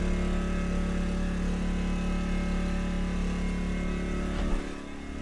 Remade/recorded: recorded